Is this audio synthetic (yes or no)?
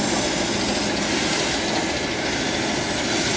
no